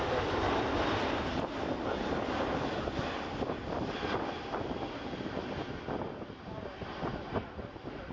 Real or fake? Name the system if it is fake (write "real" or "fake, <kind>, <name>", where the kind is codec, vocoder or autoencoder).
real